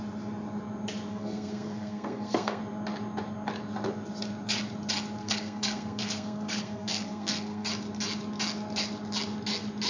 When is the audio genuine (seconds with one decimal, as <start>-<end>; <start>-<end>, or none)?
0.0-1.1; 2.6-5.2; 7.7-9.9